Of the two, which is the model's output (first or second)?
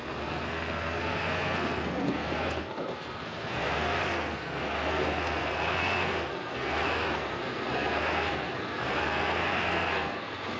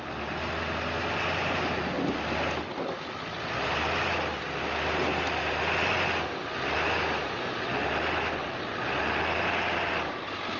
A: first